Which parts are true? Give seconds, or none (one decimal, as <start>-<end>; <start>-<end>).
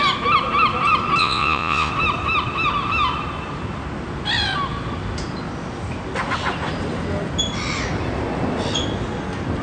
0.0-1.2; 1.9-9.6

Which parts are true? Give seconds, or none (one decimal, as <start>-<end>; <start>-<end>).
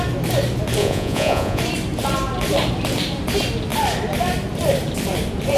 0.0-0.8; 1.6-5.6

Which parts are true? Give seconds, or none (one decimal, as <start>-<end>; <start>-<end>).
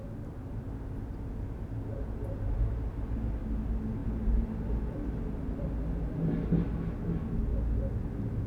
0.0-8.5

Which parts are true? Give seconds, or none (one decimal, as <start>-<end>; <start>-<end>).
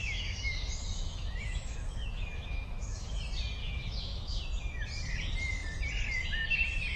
3.2-3.6; 4.4-7.0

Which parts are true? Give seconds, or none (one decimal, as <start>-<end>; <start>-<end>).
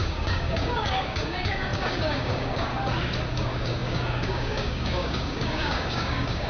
2.7-3.3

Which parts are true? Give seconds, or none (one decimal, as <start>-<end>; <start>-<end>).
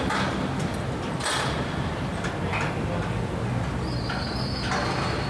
0.0-5.3